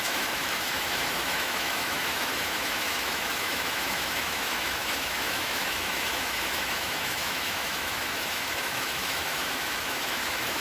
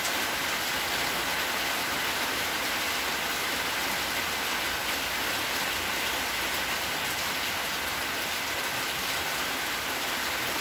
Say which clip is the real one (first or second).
second